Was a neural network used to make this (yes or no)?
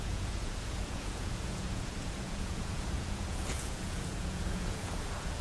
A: yes